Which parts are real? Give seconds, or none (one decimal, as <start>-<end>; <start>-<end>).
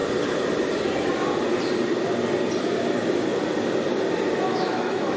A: 0.0-4.5